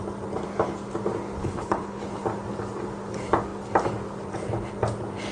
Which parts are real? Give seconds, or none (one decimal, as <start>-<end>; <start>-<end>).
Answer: 0.0-1.4; 2.0-5.3